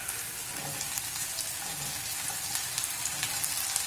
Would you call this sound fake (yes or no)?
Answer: no